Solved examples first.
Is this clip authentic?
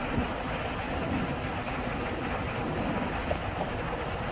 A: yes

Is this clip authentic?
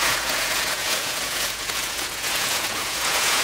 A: no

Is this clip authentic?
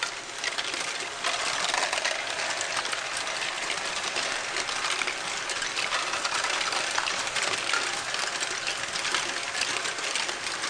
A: yes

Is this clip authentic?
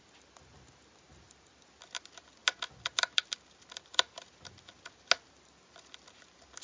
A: yes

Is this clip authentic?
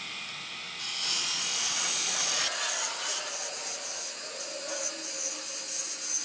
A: yes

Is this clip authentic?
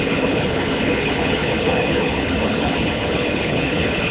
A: no